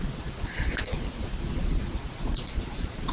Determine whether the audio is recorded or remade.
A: remade